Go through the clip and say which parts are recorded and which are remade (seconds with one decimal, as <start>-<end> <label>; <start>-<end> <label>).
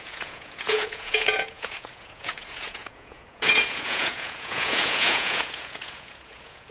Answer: 0.0-6.7 remade